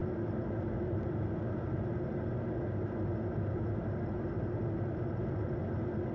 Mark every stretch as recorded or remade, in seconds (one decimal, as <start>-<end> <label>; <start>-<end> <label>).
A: 0.0-6.1 recorded